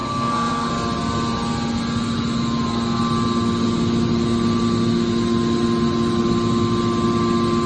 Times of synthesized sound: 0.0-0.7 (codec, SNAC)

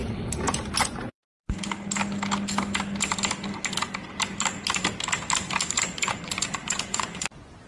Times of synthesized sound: 0.8-1.3 (vocoder, Vocos); 5.7-7.7

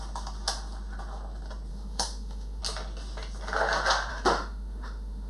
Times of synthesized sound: 1.7-2.6 (autoencoder, DAC-VAE); 4.1-5.3

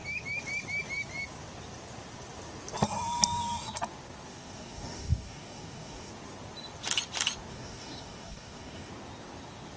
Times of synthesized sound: 4.3-6.1 (codec, DAC); 7.5-8.9

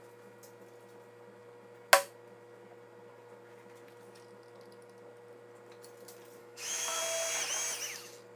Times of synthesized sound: 6.4-7.0 (autoencoder, DAC-VAE)

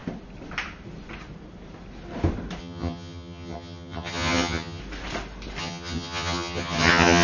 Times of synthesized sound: 2.6-4.8 (vocoder, HiFi-GAN); 5.6-7.2

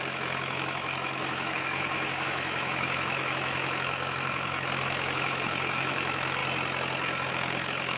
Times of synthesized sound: 0.0-6.4 (autoencoder, DAC-VAE); 7.3-8.0